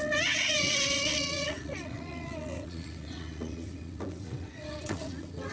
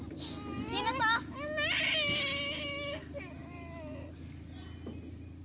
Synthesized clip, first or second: first